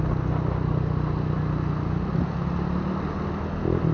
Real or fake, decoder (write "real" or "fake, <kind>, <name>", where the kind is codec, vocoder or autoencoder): real